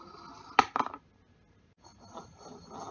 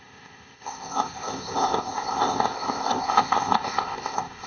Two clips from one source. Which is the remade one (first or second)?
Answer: second